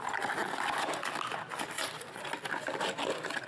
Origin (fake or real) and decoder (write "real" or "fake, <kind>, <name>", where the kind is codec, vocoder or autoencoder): real